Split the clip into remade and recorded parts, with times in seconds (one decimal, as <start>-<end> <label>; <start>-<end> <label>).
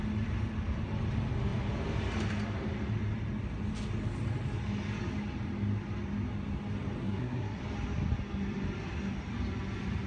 0.0-7.0 recorded; 7.0-7.6 remade; 7.6-10.1 recorded